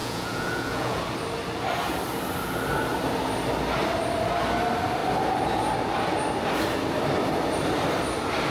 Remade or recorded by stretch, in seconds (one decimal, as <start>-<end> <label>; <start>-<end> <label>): 0.0-1.0 remade; 1.0-8.5 recorded